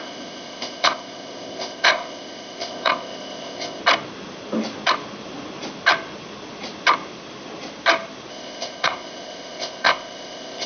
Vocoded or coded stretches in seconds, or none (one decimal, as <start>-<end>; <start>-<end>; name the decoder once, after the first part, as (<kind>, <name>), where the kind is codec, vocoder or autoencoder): 0.0-3.8 (codec, ZipCodec); 8.3-10.7